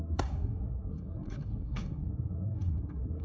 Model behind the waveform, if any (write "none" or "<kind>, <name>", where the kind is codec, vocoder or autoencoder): codec, SNAC